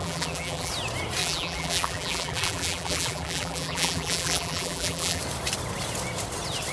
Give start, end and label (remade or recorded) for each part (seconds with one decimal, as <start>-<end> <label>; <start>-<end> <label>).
0.0-0.7 remade; 0.7-1.2 recorded; 1.2-5.2 remade; 5.2-6.7 recorded